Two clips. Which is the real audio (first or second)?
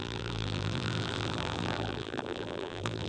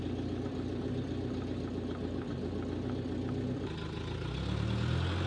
second